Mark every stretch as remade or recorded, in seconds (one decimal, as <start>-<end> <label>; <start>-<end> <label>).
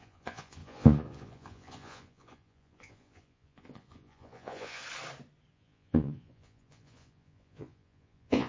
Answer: 0.0-4.8 remade; 4.8-5.5 recorded; 5.5-8.5 remade